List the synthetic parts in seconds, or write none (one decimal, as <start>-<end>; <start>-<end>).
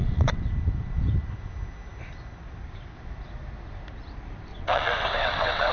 0.0-0.5; 4.5-5.7